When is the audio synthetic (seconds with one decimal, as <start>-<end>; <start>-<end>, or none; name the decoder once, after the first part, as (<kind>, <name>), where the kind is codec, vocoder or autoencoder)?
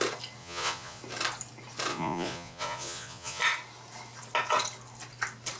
0.4-1.0 (vocoder, Vocos); 1.9-3.4